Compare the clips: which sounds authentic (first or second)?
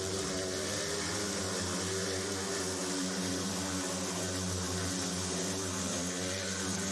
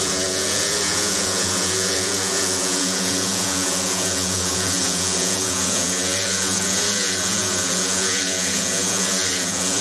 first